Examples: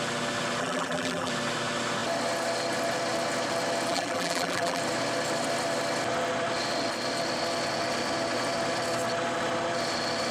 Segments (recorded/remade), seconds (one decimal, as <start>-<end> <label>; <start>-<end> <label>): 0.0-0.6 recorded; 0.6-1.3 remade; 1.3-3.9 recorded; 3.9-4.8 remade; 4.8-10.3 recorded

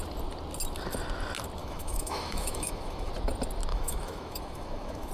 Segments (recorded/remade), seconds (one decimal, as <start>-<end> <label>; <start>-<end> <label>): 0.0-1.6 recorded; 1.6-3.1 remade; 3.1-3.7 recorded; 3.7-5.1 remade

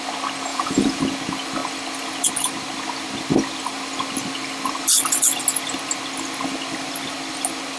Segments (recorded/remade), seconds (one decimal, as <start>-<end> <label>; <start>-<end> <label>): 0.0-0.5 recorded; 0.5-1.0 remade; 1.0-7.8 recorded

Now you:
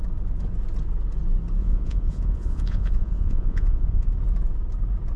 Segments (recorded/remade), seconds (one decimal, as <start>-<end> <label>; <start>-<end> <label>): 0.0-1.6 recorded; 1.6-4.1 remade; 4.1-5.2 recorded

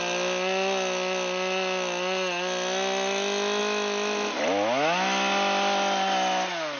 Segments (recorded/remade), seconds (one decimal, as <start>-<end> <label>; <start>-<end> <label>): 0.0-6.8 recorded